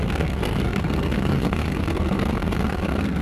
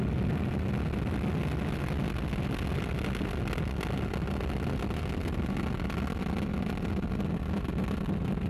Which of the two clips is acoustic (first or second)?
second